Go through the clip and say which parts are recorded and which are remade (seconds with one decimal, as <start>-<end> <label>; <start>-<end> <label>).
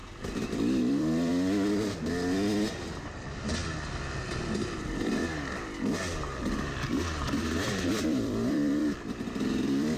0.0-0.8 recorded; 0.8-1.3 remade; 1.3-2.8 recorded; 2.8-3.6 remade; 3.6-4.8 recorded; 4.8-5.2 remade; 5.2-7.4 recorded; 7.4-10.0 remade